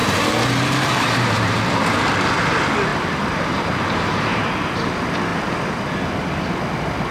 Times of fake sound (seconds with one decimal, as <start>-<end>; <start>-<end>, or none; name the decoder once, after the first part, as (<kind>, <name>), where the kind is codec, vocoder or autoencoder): 0.0-1.6 (vocoder, BigVGAN v2); 2.9-4.5; 5.3-6.2